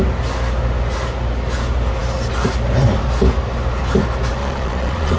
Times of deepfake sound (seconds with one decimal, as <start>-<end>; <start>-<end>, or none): 4.4-5.2